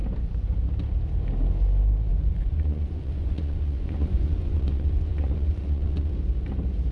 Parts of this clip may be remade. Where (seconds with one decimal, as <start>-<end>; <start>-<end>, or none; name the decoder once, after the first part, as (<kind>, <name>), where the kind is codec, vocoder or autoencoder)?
2.1-6.1 (vocoder, Vocos)